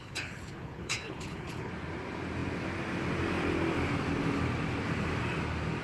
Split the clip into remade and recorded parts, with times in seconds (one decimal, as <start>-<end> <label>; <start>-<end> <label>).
0.0-1.7 remade; 1.7-5.8 recorded